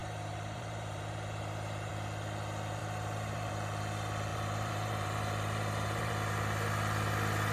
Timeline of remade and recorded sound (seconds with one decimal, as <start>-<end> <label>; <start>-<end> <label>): 0.0-1.9 remade; 1.9-2.8 recorded; 2.8-3.5 remade; 3.5-4.3 recorded; 4.3-6.1 remade; 6.1-7.5 recorded